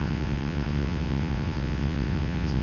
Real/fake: fake